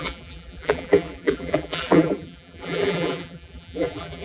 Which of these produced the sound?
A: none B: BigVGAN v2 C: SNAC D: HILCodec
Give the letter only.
B